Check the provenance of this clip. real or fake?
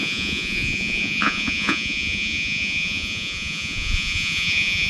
fake